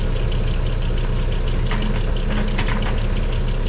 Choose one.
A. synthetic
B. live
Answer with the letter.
B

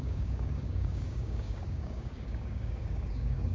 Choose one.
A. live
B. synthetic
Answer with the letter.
B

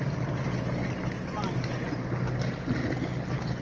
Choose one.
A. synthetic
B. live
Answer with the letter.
B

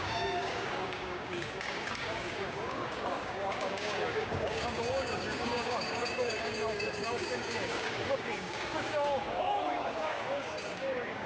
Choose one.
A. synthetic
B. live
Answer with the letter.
A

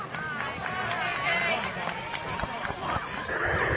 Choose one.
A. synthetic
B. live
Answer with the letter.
B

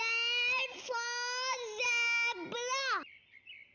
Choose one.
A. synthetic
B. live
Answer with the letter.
B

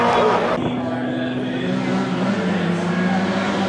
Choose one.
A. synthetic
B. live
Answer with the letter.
B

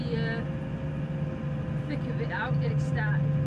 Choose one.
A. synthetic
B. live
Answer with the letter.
B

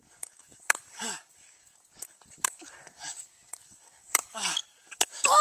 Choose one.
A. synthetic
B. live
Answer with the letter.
A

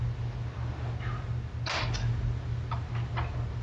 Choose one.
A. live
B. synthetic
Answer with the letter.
A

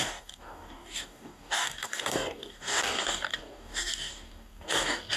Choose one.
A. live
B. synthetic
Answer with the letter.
B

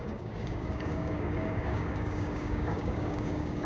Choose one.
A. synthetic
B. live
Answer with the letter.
A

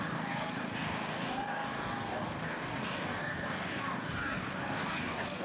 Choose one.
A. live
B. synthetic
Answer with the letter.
B